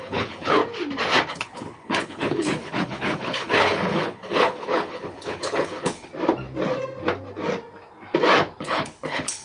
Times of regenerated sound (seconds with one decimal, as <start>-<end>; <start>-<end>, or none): 0.0-0.6; 1.3-6.1; 8.6-9.4